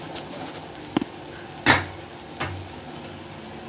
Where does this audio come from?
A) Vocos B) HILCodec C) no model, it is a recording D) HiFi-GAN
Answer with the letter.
C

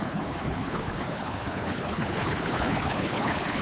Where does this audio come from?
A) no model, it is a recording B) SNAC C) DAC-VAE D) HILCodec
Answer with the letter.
D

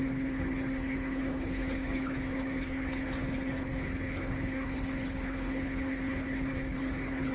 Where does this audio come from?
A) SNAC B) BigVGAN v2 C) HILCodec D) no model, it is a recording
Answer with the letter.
C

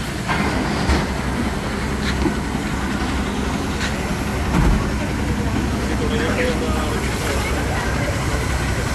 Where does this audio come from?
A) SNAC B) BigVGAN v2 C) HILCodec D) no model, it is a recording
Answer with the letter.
D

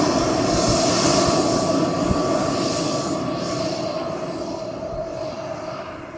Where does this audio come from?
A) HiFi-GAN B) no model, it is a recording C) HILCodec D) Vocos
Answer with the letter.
B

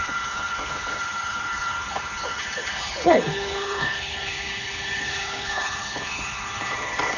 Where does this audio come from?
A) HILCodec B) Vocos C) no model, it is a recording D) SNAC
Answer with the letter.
A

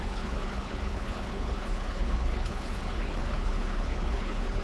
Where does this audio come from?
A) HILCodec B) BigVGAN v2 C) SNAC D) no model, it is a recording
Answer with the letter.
A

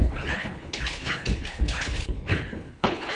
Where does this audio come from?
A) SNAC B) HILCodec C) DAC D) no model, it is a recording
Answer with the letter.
B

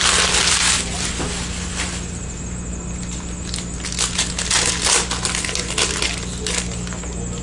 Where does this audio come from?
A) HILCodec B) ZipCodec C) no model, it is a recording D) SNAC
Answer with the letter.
C